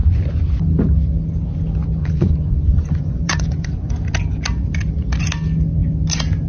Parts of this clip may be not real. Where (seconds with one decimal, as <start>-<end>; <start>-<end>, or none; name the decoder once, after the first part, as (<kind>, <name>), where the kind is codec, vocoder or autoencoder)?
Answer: 2.0-3.9 (vocoder, Vocos)